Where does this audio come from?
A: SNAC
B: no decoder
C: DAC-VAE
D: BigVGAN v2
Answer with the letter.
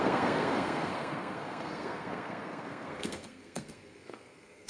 A